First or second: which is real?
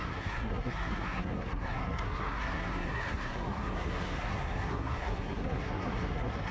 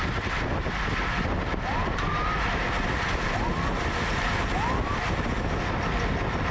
second